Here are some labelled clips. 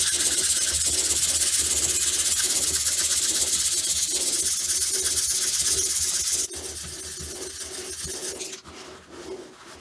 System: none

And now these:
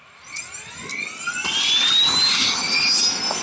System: none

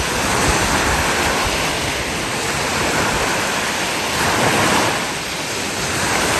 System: none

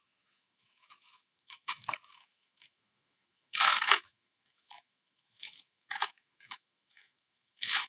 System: autoencoder, DAC-VAE